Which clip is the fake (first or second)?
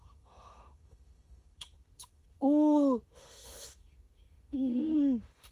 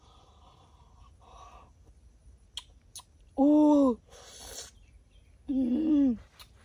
first